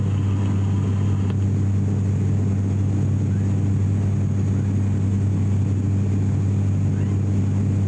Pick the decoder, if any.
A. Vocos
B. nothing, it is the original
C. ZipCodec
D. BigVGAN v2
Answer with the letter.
B